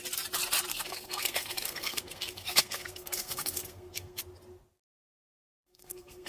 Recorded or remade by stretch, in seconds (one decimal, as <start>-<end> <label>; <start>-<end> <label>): 0.0-0.7 recorded; 0.7-4.2 remade; 4.2-5.3 recorded; 5.3-6.3 remade